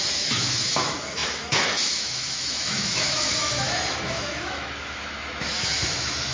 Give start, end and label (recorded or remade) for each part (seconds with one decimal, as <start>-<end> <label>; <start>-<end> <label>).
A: 0.0-6.3 remade